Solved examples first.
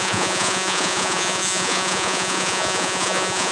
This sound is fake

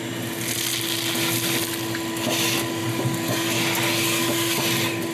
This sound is real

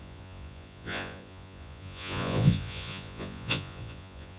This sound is fake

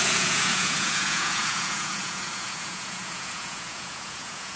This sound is fake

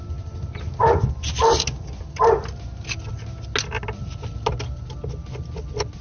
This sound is real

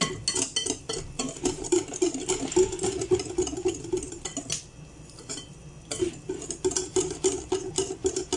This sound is real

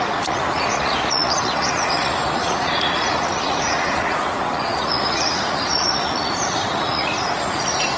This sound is fake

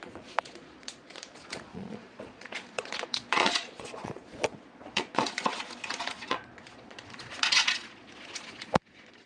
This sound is fake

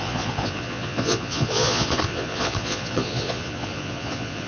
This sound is fake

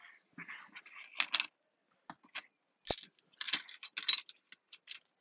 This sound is real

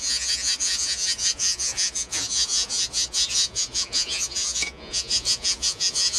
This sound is fake